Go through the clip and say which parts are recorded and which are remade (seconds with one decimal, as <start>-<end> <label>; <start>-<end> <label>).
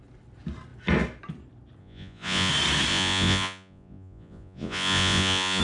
0.0-1.8 recorded; 1.8-2.5 remade; 2.5-2.9 recorded; 2.9-5.6 remade